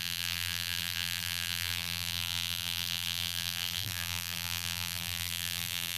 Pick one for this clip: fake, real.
fake